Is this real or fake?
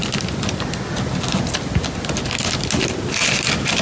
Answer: real